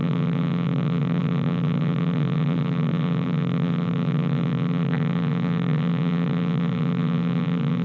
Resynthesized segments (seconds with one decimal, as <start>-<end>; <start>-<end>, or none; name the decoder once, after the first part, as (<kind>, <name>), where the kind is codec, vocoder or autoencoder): 0.0-7.8 (vocoder, BigVGAN v2)

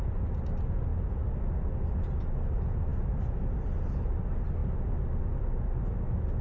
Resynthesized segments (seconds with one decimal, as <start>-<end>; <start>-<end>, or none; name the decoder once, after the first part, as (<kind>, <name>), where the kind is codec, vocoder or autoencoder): none

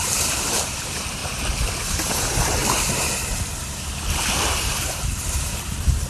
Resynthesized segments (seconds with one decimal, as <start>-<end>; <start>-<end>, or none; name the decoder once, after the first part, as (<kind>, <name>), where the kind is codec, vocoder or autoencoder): 0.0-2.6 (vocoder, BigVGAN v2); 4.5-6.1

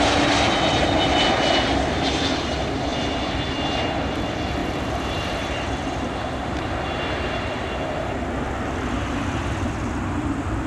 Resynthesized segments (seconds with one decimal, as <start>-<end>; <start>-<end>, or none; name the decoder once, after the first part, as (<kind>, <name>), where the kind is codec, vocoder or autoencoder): 4.6-6.7 (vocoder, BigVGAN v2)